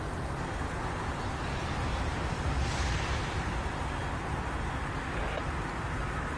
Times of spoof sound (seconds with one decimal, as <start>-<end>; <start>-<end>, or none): 1.9-3.5

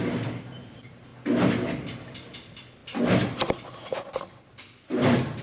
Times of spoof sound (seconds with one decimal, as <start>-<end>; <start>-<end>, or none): none